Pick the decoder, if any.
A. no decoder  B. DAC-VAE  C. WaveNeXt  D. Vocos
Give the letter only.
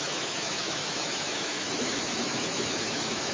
B